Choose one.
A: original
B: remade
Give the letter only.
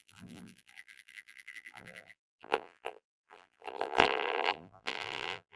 B